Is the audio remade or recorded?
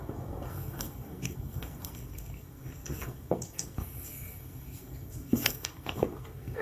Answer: remade